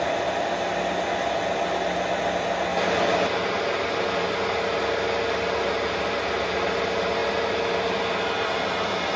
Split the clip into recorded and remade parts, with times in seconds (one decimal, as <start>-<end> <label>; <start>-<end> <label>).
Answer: 0.0-9.2 recorded